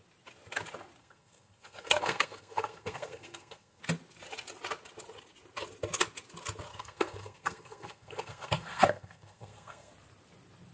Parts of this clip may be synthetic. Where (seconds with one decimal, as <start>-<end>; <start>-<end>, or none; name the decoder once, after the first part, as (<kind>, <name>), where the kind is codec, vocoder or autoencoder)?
1.0-3.8 (codec, SNAC); 6.7-9.9